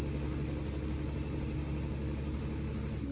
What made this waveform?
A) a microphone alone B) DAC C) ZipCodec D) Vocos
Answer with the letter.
A